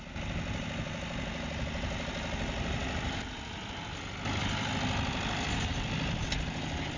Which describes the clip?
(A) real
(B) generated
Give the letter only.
A